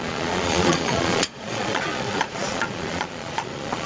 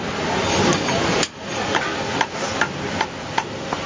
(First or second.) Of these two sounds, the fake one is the first